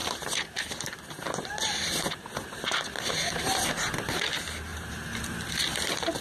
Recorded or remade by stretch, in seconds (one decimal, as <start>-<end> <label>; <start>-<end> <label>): 0.0-3.7 remade; 3.7-4.7 recorded; 4.7-5.3 remade; 5.3-6.2 recorded